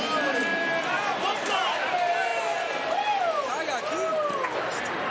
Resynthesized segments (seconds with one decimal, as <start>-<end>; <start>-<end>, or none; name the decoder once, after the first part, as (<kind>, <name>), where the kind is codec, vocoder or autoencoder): none